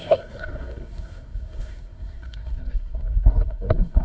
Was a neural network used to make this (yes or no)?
yes